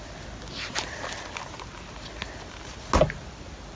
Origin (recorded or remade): recorded